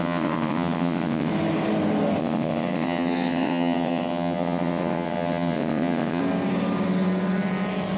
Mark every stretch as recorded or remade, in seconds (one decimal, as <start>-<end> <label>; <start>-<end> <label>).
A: 0.0-1.3 remade; 1.3-2.2 recorded; 2.2-6.2 remade; 6.2-8.0 recorded